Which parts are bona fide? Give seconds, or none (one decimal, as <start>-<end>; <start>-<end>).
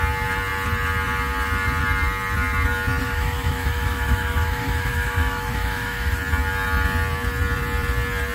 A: 0.0-3.0; 6.2-8.3